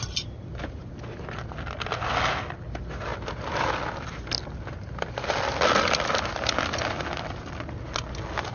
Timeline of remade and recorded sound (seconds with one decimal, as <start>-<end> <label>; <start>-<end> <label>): 0.0-8.5 recorded